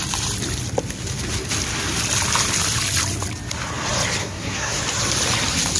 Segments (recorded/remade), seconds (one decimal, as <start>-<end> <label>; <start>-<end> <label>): 0.0-4.2 recorded; 4.2-4.8 remade; 4.8-5.8 recorded